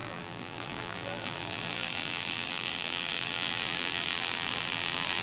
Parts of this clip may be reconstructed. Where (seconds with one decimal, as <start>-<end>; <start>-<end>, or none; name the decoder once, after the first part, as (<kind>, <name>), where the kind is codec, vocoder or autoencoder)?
0.0-5.2 (vocoder, BigVGAN v2)